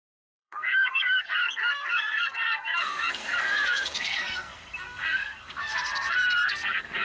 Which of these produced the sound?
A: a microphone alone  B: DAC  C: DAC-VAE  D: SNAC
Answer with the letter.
D